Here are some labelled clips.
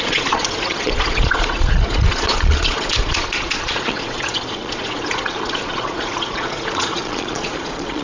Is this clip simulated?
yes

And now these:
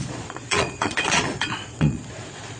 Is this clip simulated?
yes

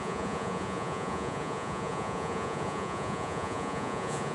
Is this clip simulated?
yes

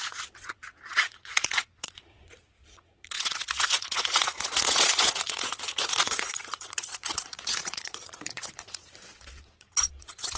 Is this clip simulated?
yes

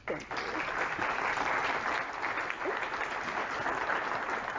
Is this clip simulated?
no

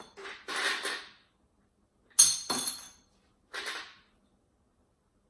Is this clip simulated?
no